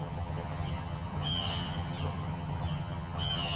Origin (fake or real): fake